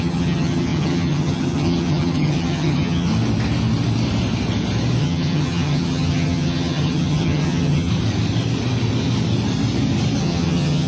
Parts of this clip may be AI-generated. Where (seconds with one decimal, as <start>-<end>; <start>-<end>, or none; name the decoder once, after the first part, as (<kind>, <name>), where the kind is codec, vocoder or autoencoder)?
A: 0.0-3.1 (vocoder, HiFi-GAN); 5.0-7.9; 10.2-10.9